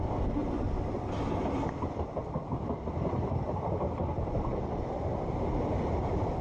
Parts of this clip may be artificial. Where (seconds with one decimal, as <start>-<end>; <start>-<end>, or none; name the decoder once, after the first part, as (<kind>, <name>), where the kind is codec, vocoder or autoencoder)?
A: none